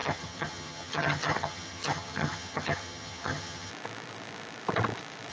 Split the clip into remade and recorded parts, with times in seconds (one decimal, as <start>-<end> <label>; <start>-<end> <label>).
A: 0.0-3.7 remade; 3.7-5.3 recorded